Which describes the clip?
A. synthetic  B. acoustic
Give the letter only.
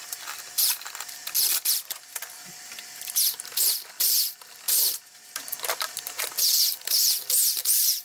A